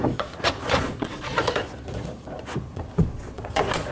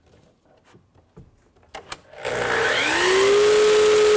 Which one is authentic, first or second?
second